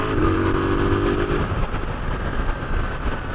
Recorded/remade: recorded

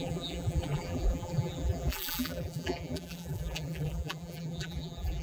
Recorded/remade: remade